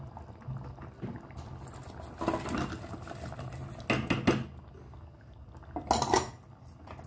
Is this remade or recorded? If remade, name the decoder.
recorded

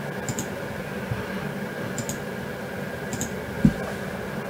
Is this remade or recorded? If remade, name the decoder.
recorded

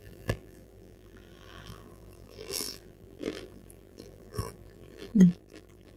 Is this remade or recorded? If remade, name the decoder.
remade, vocoder, BigVGAN v2